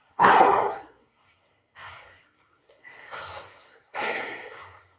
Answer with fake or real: fake